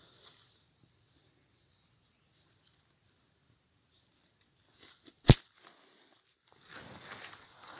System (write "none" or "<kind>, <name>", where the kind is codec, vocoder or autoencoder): none